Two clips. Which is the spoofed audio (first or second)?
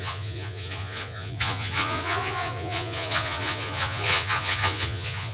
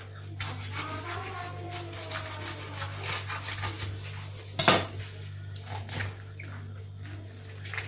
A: first